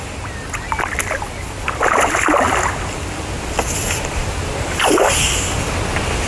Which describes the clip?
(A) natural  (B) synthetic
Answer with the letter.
A